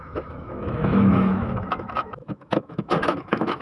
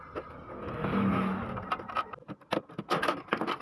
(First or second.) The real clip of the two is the second